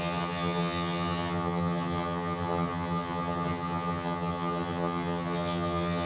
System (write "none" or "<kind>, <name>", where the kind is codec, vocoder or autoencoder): vocoder, HiFi-GAN